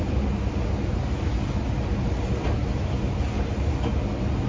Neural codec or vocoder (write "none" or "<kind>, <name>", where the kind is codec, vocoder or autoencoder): none